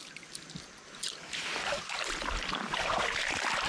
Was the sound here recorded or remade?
recorded